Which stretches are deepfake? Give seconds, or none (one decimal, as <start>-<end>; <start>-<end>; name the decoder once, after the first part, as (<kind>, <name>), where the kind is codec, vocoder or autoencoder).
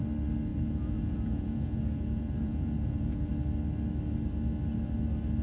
0.5-3.3 (vocoder, Vocos)